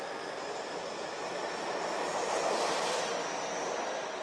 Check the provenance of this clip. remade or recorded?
recorded